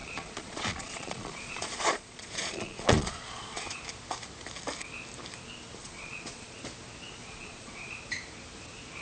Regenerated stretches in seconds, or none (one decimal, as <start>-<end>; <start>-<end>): 0.0-3.8; 5.8-6.6; 7.2-7.9